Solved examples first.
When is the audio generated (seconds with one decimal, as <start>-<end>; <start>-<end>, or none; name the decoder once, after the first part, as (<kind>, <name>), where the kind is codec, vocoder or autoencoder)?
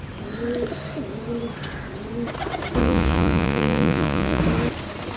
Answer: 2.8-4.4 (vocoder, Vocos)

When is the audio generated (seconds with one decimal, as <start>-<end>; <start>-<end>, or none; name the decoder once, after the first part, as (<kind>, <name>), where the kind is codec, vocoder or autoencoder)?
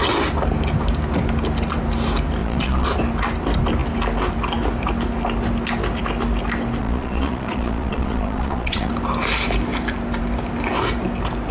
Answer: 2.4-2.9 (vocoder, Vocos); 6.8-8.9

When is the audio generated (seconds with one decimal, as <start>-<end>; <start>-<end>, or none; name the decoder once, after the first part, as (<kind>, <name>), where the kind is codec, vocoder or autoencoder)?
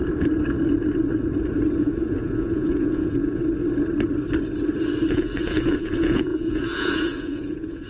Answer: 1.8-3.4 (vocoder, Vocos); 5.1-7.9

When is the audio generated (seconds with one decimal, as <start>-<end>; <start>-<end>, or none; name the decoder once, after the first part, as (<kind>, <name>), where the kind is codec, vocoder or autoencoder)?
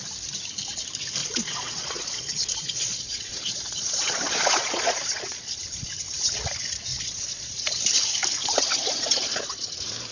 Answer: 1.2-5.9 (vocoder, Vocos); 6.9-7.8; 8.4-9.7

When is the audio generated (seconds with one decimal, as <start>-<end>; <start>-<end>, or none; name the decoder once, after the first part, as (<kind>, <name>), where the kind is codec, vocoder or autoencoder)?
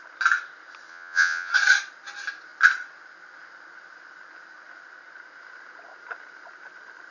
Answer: 0.9-1.5 (vocoder, Vocos)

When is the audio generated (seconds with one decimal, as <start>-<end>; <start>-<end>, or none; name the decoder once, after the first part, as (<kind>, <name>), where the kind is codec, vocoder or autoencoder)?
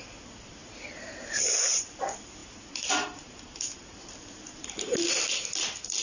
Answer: none